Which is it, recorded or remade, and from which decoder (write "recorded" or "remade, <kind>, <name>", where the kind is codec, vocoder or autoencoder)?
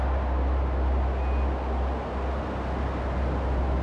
recorded